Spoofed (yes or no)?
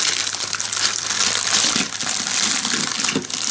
no